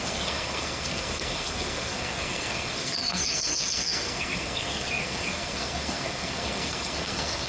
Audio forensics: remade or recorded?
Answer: remade